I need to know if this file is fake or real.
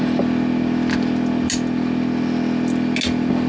real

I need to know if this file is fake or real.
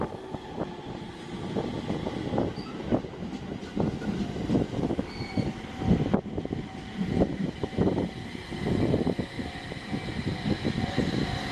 real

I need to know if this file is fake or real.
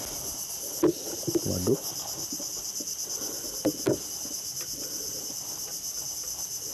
real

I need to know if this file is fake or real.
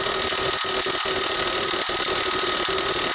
real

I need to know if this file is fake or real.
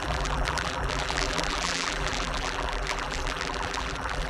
fake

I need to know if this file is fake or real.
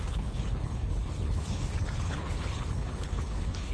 fake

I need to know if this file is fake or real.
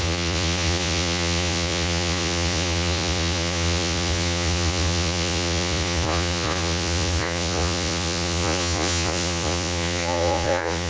fake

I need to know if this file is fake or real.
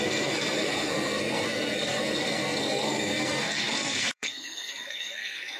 fake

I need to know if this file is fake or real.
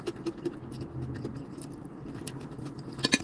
real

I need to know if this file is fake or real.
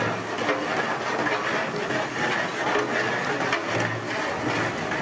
real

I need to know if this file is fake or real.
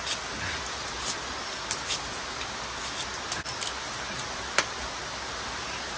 real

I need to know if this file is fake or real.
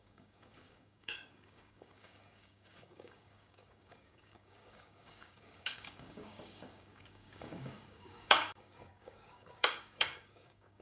fake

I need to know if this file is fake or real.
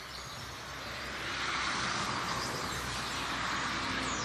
real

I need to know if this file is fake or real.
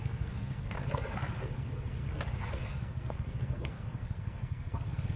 fake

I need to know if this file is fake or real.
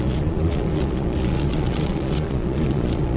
fake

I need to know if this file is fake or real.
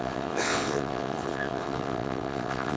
fake